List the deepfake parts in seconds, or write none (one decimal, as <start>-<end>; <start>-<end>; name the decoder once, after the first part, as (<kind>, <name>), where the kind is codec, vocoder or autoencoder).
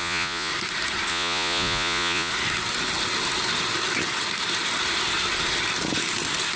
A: 0.0-0.5 (vocoder, Vocos); 1.1-2.3